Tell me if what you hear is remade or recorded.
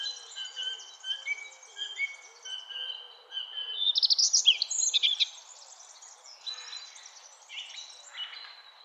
recorded